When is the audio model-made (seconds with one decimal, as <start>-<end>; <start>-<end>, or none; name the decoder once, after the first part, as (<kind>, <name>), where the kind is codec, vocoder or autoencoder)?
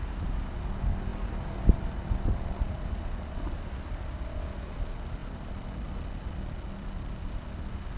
none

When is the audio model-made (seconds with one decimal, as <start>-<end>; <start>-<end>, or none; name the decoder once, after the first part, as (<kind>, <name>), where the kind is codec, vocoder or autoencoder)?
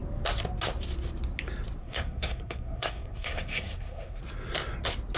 1.8-4.2 (codec, SNAC)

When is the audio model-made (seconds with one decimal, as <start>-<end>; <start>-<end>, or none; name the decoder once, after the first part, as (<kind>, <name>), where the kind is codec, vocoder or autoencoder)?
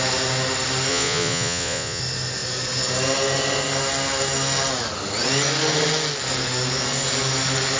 0.9-2.0 (vocoder, Vocos)